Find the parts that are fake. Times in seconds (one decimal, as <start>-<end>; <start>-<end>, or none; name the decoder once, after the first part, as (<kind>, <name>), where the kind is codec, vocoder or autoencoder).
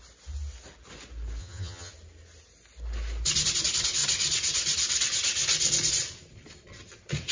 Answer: 1.4-1.9 (vocoder, HiFi-GAN)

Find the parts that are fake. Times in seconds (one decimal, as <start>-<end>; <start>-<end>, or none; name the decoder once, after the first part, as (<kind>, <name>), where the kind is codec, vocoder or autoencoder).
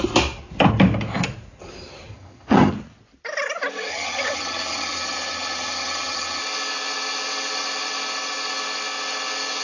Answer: 2.1-2.7 (vocoder, HiFi-GAN); 3.9-6.4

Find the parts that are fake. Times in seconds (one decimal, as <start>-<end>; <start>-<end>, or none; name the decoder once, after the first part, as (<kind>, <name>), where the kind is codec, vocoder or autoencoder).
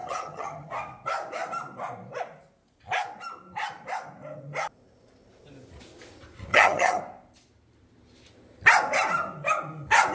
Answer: 0.0-0.7 (vocoder, HiFi-GAN); 6.5-7.0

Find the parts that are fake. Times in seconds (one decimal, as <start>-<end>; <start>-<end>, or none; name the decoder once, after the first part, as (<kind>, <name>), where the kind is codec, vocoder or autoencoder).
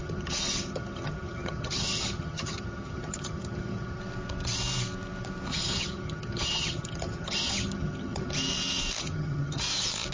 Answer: 0.0-4.0 (vocoder, HiFi-GAN); 5.5-8.3; 9.0-9.6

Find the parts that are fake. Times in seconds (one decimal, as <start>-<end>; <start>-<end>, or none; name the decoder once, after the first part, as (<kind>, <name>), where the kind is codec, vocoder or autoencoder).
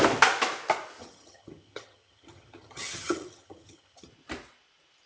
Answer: 1.0-4.1 (vocoder, HiFi-GAN)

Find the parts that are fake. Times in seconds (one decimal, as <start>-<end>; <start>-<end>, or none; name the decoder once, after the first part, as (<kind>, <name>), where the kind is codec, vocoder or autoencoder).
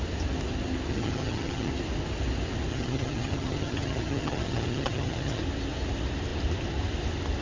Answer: 0.9-1.7 (vocoder, HiFi-GAN); 2.7-5.4